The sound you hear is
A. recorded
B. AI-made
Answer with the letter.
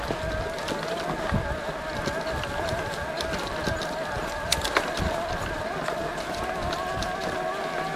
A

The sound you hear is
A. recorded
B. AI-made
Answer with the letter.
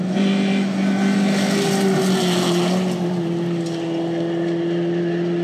A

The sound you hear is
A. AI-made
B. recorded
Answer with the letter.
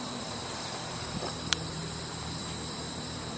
A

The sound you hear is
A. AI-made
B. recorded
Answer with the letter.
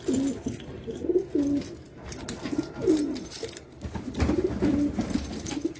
B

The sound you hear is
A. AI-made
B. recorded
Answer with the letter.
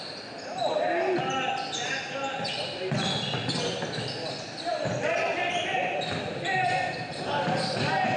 B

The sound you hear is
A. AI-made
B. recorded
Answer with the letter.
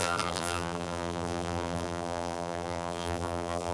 A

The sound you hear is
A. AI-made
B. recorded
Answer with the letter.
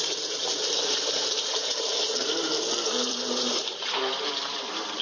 A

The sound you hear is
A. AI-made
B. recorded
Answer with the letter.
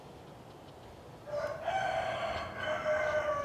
B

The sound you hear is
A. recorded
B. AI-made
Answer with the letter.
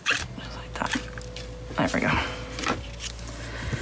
A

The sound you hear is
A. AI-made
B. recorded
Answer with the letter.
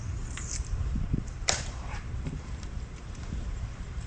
A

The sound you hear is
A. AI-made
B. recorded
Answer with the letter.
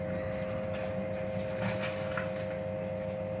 B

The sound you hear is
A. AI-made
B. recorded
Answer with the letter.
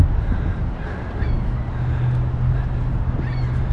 B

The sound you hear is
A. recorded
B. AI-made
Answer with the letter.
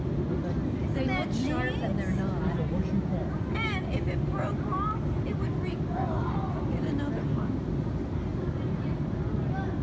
A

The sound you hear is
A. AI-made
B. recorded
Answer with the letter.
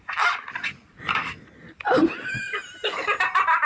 A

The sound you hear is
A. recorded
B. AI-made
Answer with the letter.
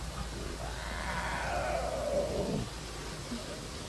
A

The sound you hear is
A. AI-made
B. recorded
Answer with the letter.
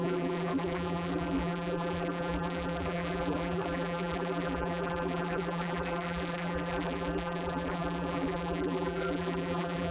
A